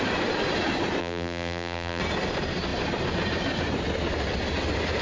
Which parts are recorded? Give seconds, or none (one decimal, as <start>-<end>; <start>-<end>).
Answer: 0.0-1.0; 2.0-5.0